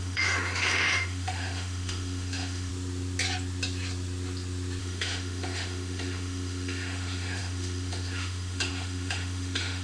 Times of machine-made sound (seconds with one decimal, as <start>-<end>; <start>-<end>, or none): 0.0-2.7; 4.8-9.8